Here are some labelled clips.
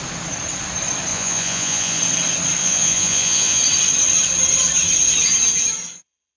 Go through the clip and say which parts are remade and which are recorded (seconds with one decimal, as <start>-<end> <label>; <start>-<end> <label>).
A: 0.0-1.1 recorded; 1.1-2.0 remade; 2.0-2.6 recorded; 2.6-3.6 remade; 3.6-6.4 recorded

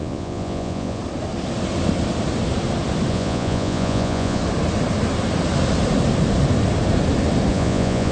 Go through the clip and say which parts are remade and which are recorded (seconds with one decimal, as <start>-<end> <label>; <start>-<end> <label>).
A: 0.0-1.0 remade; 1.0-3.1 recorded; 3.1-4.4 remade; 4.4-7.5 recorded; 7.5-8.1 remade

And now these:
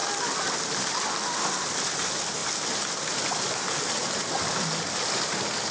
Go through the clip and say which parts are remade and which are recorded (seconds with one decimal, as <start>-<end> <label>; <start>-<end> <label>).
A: 0.0-5.7 recorded

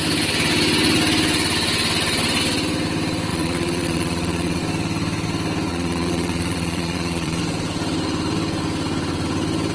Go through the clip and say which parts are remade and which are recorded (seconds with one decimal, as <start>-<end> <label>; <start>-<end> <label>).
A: 0.0-3.3 recorded; 3.3-4.6 remade; 4.6-5.7 recorded; 5.7-7.4 remade; 7.4-9.7 recorded

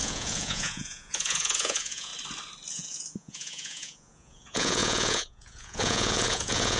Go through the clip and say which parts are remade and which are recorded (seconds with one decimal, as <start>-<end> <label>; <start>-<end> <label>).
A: 0.0-2.1 remade; 2.1-2.7 recorded; 2.7-6.8 remade

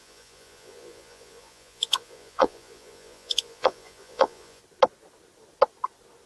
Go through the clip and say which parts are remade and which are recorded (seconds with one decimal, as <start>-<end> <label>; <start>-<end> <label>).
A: 0.0-4.6 remade; 4.6-6.3 recorded

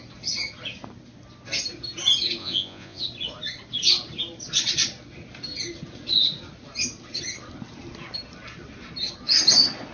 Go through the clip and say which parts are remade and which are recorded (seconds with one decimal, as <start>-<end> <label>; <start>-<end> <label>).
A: 0.0-2.4 recorded; 2.4-3.0 remade; 3.0-9.9 recorded

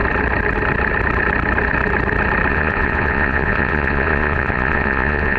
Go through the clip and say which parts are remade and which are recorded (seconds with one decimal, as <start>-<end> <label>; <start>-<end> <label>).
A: 0.0-2.5 recorded; 2.5-5.4 remade